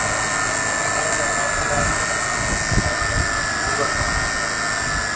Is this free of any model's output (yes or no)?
yes